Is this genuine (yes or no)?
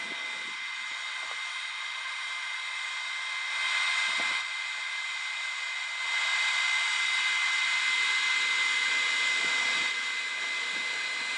yes